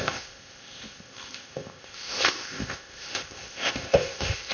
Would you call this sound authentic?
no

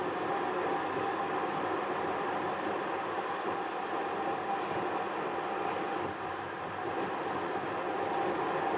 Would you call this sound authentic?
yes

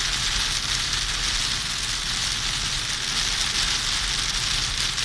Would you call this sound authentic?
yes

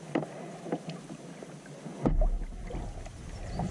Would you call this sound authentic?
yes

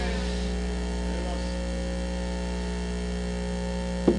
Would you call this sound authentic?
yes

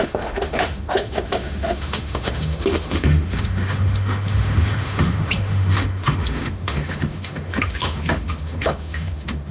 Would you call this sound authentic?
no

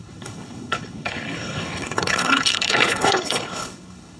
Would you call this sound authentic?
no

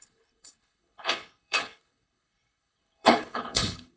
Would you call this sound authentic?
no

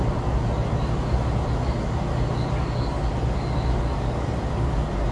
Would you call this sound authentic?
yes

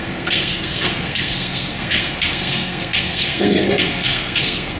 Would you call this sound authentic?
no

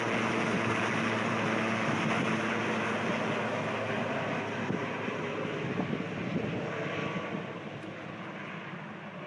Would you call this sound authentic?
yes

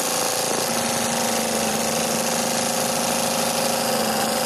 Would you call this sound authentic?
yes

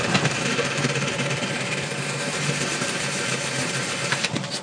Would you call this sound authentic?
no